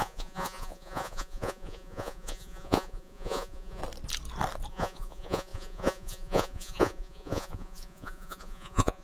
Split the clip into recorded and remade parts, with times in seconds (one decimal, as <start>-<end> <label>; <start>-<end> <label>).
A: 0.0-3.8 remade; 3.8-4.7 recorded; 4.7-9.0 remade